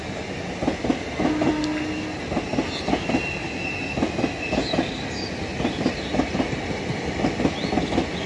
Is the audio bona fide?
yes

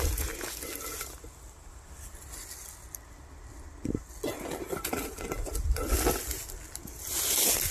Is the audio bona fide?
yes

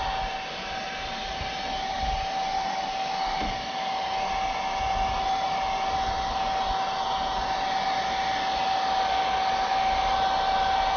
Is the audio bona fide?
yes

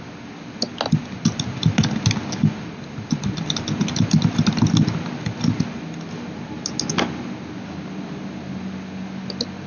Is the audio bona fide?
yes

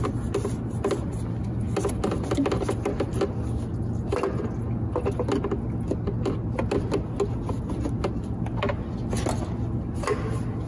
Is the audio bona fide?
yes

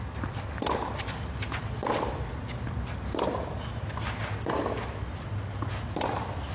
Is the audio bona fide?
yes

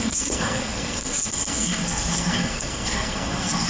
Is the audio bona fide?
no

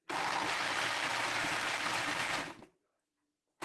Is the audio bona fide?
yes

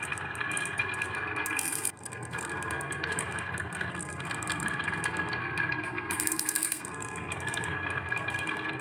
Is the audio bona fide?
no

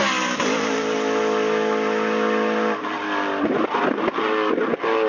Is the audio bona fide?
yes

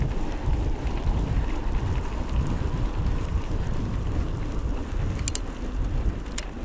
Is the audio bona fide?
yes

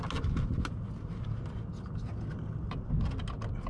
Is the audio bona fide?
yes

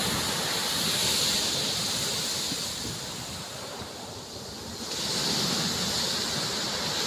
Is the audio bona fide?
yes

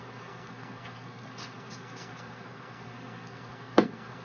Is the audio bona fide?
no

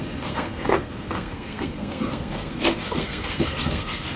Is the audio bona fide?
no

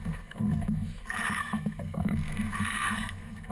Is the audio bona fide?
no